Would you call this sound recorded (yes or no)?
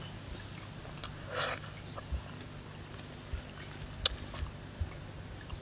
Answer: yes